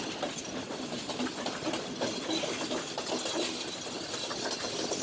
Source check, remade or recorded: recorded